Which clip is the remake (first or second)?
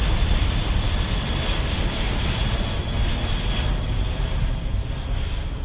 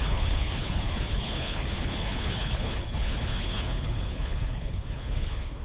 second